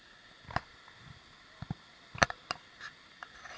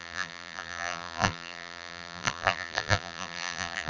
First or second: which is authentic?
first